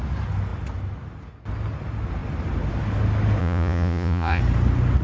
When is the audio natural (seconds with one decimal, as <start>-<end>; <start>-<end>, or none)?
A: 0.0-3.4; 4.4-5.0

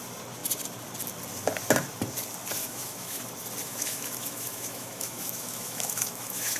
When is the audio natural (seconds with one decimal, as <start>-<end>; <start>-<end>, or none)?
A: 0.0-2.6; 3.2-3.6

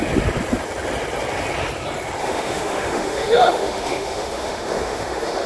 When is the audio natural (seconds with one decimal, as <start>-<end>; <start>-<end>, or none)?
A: 0.0-2.2

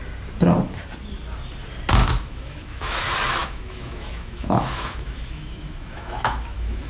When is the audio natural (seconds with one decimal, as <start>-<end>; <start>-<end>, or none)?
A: 0.0-2.0; 3.0-3.4

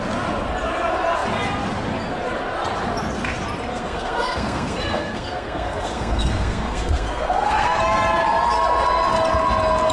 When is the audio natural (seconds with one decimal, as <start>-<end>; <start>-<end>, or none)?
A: 0.0-3.7; 7.8-9.9